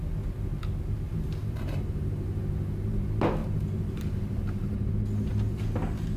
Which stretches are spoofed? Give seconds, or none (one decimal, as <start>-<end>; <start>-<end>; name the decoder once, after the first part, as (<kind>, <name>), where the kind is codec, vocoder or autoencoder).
1.4-2.4 (vocoder, BigVGAN v2); 3.4-4.9